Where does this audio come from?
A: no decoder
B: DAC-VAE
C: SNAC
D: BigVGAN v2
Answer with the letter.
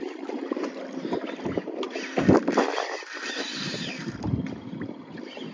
D